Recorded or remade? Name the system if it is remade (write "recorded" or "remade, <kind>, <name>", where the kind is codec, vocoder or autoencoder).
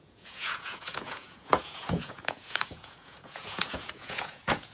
remade, vocoder, Vocos